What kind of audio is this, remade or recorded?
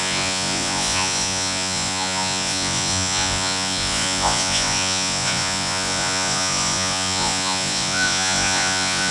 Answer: remade